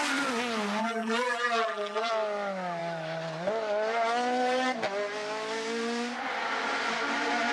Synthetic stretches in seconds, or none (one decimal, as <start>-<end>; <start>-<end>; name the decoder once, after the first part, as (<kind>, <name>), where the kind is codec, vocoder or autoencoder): 0.8-2.1 (vocoder, BigVGAN v2)